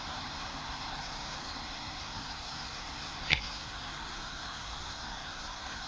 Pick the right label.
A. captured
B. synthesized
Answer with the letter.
B